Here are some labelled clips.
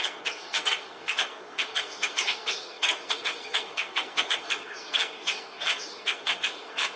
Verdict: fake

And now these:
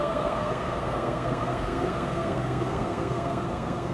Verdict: fake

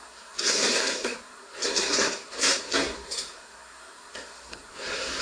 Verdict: fake